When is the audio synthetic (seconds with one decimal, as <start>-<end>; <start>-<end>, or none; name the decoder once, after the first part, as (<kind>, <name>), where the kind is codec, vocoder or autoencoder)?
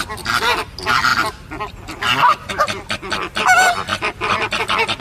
none